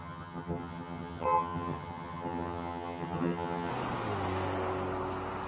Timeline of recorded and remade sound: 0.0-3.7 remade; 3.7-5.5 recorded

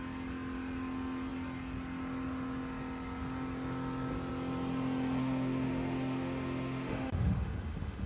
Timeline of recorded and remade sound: 0.0-5.2 recorded; 5.2-8.1 remade

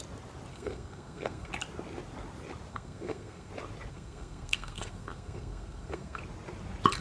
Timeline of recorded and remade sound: 0.0-0.5 recorded; 0.5-1.5 remade; 1.5-2.7 recorded; 2.7-3.5 remade; 3.5-3.9 recorded; 3.9-6.2 remade; 6.2-7.0 recorded

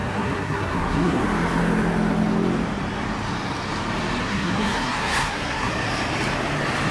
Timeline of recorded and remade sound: 0.0-1.2 remade; 1.2-4.2 recorded; 4.2-5.7 remade; 5.7-6.9 recorded

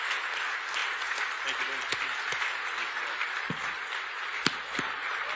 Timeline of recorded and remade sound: 0.0-5.4 recorded

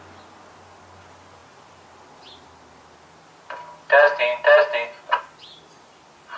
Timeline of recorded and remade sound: 0.0-6.4 recorded

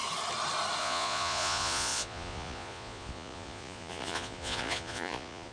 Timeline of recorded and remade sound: 0.0-0.8 recorded; 0.8-5.5 remade